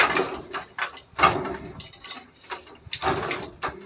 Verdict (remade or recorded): recorded